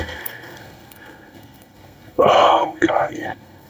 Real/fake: fake